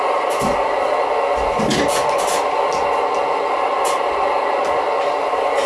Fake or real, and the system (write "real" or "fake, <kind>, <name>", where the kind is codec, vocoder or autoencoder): real